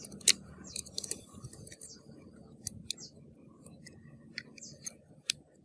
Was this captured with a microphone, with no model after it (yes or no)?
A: yes